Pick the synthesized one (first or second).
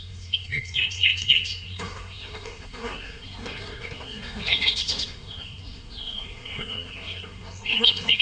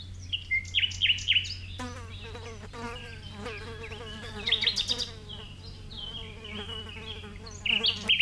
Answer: first